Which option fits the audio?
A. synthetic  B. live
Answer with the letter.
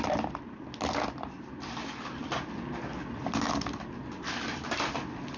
B